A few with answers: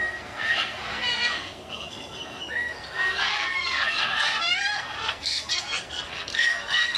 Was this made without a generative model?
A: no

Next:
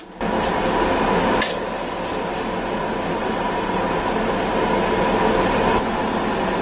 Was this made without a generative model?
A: yes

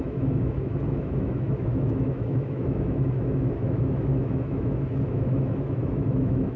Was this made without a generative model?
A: no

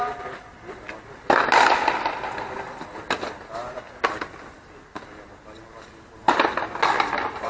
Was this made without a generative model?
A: yes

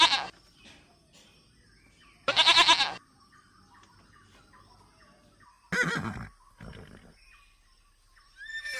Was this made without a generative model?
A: yes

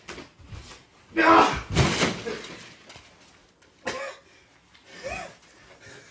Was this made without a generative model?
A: yes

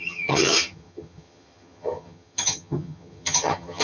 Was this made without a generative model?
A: no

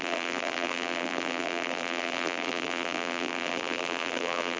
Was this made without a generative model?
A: no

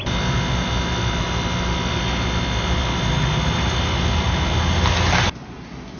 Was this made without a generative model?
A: yes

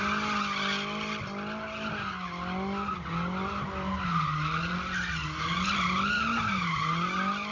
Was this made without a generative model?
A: yes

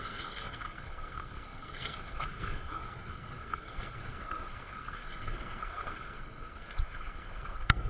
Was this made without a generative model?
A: no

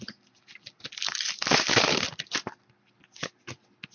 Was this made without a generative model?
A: yes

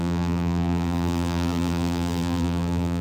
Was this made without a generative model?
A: no